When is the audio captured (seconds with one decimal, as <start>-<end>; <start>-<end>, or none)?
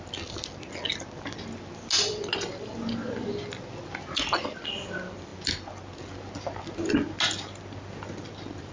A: 0.0-8.7